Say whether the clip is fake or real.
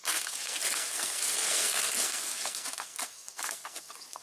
fake